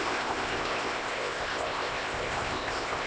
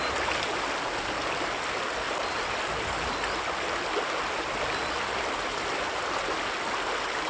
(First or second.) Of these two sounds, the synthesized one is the first